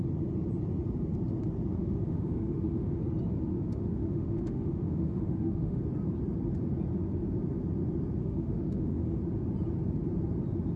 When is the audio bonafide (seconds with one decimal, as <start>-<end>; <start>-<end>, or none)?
0.0-1.8; 3.0-3.5; 5.8-8.2; 9.2-10.8